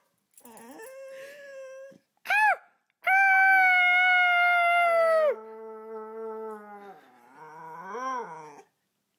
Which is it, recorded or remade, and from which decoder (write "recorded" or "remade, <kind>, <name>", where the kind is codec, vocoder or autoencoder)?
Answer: recorded